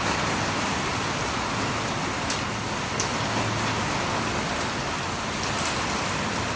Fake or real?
real